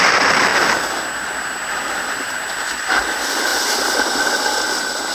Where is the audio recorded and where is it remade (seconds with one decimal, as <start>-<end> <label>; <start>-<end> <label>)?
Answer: 0.0-5.1 recorded

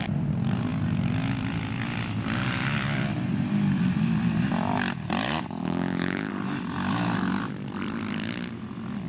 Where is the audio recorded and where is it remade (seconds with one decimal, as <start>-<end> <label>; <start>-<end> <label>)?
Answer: 0.0-5.6 recorded; 5.6-6.3 remade; 6.3-9.1 recorded

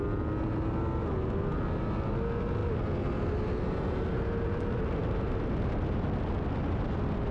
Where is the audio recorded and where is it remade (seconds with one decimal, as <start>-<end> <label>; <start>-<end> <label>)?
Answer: 0.0-7.3 recorded

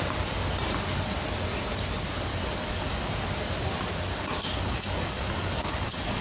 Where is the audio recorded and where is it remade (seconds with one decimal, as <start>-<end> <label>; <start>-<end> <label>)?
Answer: 0.0-2.3 recorded; 2.3-3.1 remade; 3.1-4.1 recorded; 4.1-6.2 remade

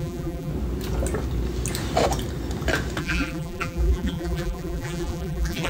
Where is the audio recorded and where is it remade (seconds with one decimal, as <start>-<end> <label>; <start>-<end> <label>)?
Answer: 0.0-0.5 remade; 0.5-3.0 recorded; 3.0-5.7 remade